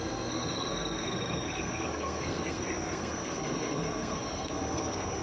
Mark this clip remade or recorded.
remade